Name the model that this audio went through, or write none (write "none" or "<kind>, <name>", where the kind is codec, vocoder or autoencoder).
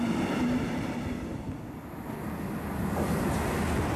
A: none